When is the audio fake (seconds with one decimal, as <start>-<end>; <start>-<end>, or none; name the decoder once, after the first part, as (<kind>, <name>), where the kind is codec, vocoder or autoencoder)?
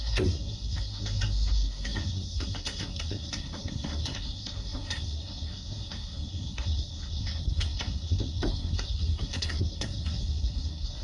0.0-11.0 (codec, SNAC)